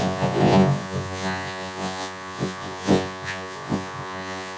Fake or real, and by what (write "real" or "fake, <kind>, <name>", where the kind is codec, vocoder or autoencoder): fake, vocoder, Vocos